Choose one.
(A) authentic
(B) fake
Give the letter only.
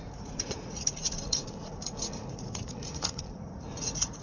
B